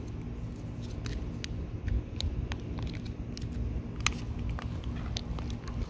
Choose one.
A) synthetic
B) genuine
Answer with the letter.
B